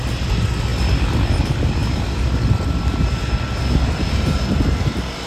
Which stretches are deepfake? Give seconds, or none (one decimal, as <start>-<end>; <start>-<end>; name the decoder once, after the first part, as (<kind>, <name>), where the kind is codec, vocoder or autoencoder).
none